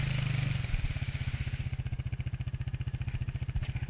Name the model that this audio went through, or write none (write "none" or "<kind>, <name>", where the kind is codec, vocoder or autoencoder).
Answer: none